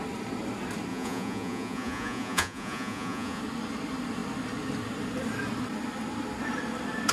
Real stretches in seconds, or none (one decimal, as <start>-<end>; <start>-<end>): 0.0-0.9; 3.4-7.1